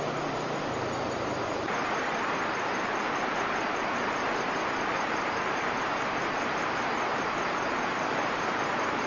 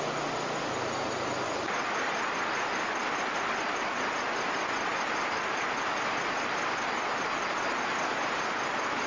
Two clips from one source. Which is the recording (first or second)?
second